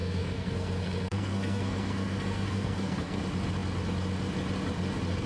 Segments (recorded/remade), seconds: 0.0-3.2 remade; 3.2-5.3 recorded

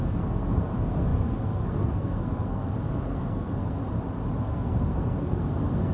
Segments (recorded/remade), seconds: 0.0-3.8 remade; 3.8-4.4 recorded; 4.4-5.9 remade